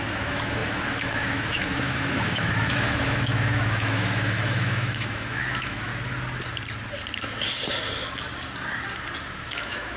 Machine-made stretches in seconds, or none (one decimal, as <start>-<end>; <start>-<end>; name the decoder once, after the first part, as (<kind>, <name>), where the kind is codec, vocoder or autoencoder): 0.0-5.9 (autoencoder, DAC-VAE); 9.3-10.0